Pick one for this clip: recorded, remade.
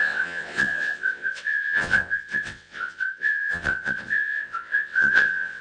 remade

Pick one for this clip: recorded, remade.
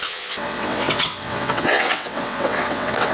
remade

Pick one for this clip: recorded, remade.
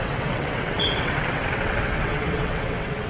remade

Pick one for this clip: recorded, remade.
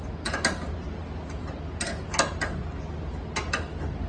recorded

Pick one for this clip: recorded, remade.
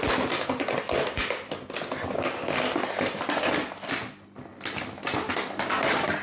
recorded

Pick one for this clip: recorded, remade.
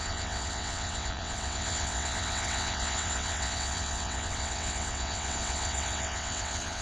remade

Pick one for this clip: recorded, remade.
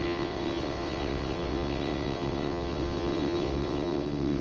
remade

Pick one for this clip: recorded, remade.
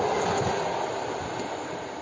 recorded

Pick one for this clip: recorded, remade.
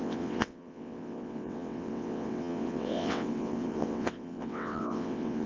remade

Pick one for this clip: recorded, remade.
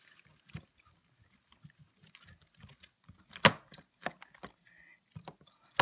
recorded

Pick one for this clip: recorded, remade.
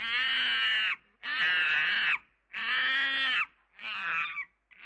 recorded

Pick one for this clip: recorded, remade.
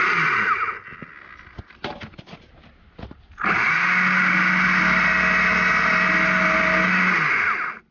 recorded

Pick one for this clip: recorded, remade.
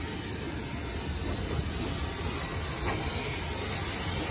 recorded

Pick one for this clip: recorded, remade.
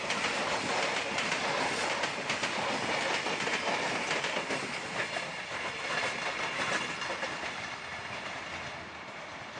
recorded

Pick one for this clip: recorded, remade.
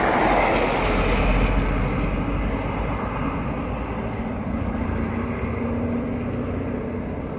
recorded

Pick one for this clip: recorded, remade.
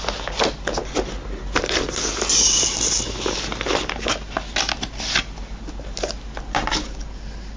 recorded